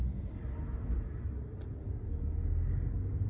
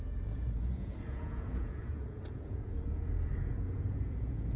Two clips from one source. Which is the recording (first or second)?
first